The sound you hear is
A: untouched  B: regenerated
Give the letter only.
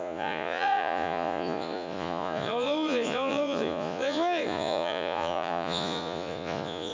B